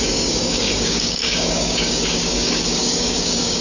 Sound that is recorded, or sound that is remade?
remade